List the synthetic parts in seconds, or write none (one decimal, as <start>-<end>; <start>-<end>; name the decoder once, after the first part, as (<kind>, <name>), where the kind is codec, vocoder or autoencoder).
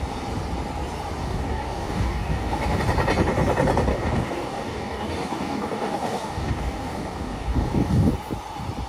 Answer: 1.2-2.8 (codec, DAC); 3.9-8.1